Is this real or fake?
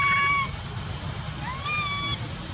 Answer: real